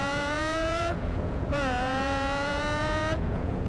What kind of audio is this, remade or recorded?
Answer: remade